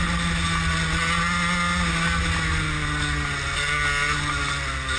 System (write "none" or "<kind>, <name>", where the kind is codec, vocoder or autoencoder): none